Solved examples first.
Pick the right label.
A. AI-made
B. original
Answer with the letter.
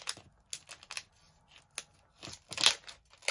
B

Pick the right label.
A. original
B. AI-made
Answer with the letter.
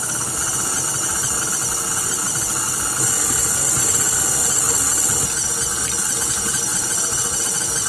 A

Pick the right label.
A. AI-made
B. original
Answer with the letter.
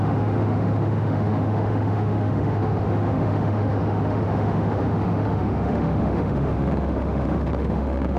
A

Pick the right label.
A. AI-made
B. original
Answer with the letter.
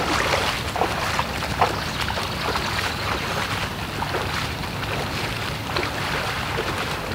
B